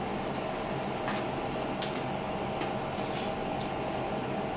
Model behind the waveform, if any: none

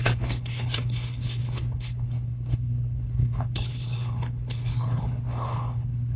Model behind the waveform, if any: codec, HILCodec